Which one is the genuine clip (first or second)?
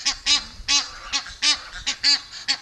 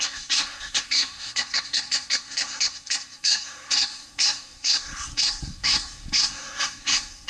first